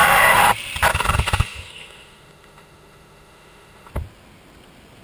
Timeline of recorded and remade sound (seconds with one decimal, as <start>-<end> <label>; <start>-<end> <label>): 0.0-0.5 remade; 0.5-0.9 recorded; 0.9-3.9 remade; 3.9-5.0 recorded